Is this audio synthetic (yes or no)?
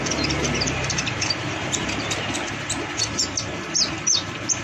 yes